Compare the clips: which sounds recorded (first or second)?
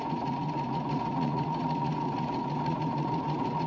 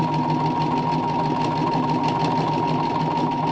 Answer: second